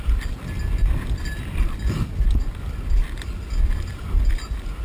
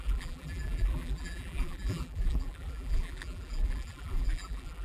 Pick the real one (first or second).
first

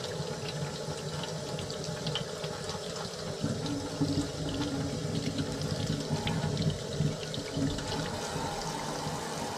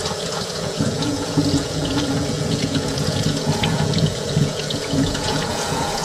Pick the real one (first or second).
first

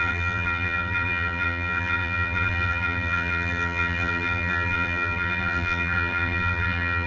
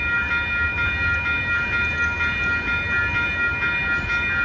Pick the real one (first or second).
second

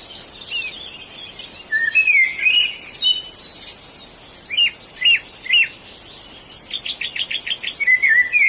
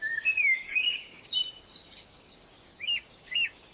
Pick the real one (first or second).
first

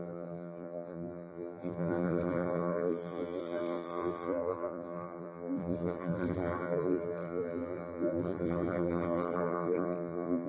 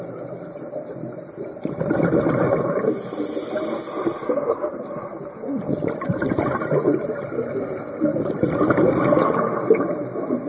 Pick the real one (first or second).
second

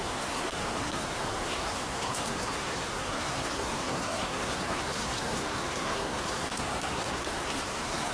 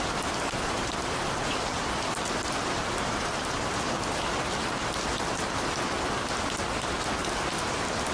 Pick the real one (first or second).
second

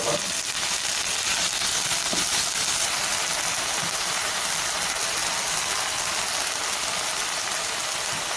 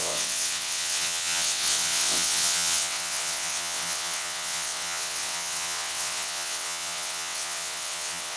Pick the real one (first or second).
first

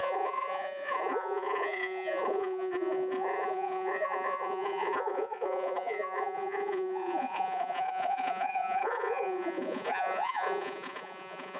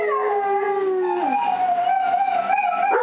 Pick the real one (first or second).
second